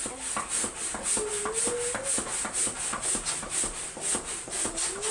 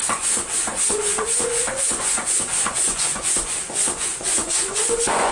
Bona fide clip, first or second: first